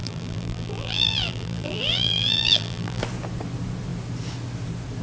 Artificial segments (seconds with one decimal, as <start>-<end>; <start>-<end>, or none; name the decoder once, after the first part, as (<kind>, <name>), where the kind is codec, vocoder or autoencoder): 0.0-3.0 (vocoder, BigVGAN v2)